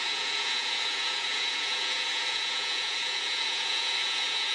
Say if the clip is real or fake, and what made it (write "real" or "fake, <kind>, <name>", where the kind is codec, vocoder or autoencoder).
fake, vocoder, Vocos